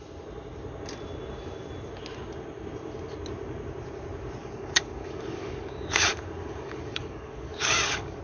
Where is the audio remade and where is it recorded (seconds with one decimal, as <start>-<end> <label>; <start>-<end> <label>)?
0.0-4.4 recorded; 4.4-8.2 remade